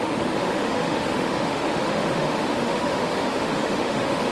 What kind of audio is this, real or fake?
fake